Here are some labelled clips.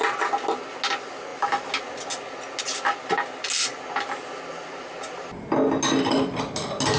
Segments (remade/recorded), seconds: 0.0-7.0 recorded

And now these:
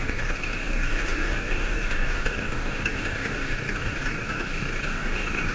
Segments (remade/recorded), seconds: 0.0-5.5 remade